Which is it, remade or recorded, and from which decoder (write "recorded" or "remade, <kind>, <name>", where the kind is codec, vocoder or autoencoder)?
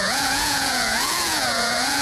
remade, vocoder, Vocos